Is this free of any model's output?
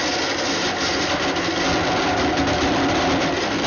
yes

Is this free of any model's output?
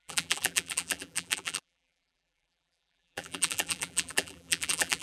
no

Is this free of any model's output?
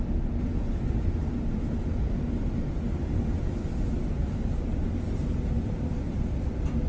yes